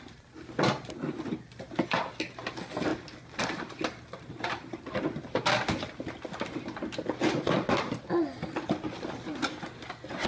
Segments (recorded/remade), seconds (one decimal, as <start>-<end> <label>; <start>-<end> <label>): 0.0-10.3 recorded